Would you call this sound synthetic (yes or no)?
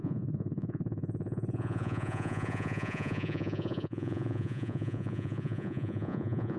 yes